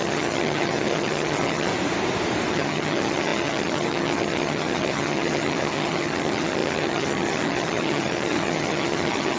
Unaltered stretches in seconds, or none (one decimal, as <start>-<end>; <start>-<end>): 1.7-2.5